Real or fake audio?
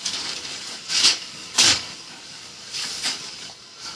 fake